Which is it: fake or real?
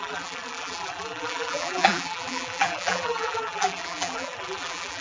fake